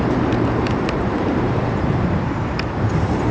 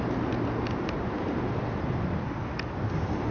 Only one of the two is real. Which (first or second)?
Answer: second